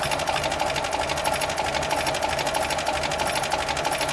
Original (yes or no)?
yes